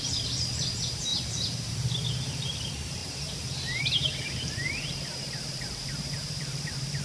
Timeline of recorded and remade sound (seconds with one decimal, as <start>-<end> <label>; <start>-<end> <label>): 0.0-7.0 remade